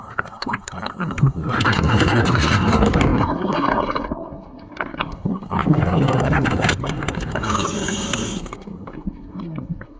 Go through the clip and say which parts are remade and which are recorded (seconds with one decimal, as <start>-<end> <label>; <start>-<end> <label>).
0.0-10.0 remade